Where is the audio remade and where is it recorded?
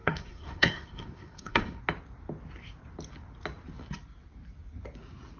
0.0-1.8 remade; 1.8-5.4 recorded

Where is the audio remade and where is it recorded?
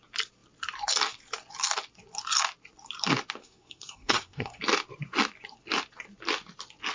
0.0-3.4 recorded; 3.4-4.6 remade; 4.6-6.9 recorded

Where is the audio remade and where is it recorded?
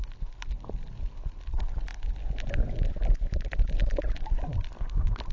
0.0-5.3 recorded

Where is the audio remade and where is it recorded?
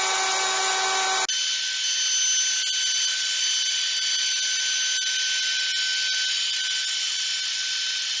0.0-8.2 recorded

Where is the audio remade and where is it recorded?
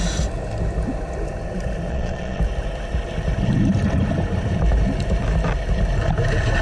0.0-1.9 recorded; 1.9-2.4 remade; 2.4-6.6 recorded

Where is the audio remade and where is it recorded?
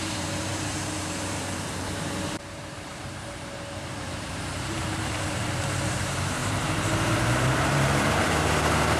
0.0-9.0 remade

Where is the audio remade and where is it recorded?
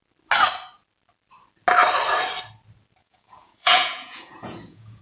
0.0-3.0 recorded; 3.0-5.0 remade